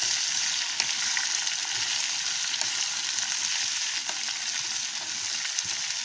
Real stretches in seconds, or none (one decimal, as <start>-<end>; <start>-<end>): 0.0-6.0